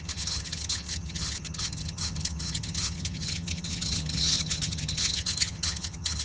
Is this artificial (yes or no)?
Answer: yes